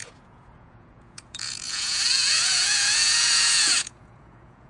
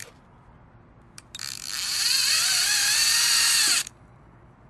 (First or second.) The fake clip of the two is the first